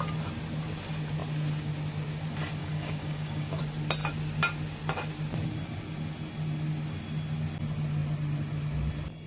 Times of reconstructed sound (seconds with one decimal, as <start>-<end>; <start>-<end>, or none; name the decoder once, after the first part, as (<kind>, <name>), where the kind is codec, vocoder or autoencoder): 2.6-3.6 (codec, DAC)